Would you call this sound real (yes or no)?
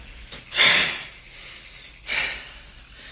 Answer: yes